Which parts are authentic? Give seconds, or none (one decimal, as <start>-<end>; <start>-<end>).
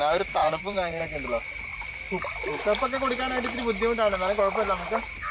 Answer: 0.0-0.4; 1.0-5.3